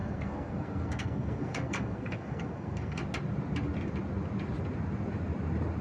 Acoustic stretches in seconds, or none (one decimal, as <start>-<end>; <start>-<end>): 3.0-5.8